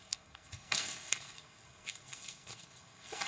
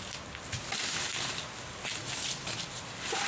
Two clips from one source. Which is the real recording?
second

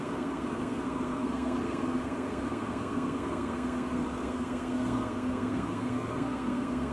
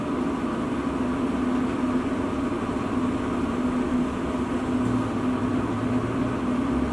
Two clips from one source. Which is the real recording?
second